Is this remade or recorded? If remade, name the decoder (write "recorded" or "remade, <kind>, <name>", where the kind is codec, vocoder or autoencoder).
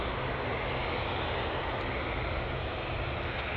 recorded